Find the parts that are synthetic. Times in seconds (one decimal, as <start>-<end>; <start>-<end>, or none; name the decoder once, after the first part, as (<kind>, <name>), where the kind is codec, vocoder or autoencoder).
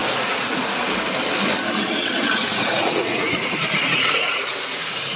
0.0-0.9 (vocoder, Vocos); 2.5-5.2